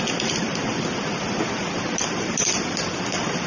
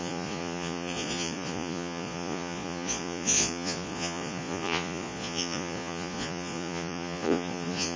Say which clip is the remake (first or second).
second